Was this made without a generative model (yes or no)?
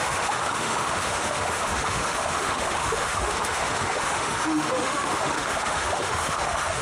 no